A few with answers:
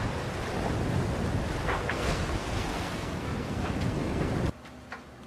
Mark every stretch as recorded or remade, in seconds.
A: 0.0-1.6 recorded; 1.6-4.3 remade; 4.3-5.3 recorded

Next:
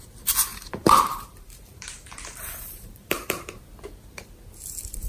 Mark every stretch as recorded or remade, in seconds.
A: 0.0-0.5 recorded; 0.5-3.6 remade; 3.6-5.1 recorded

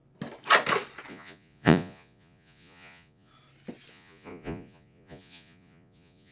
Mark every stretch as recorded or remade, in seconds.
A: 0.0-1.1 recorded; 1.1-3.3 remade; 3.3-3.9 recorded; 3.9-6.3 remade

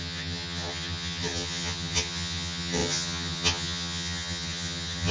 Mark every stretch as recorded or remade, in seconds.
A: 0.0-5.1 remade

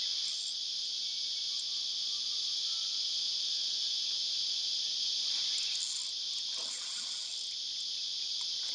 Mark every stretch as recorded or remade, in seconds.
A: 0.0-2.6 recorded; 2.6-4.3 remade; 4.3-8.7 recorded